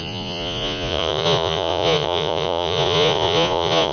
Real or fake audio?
fake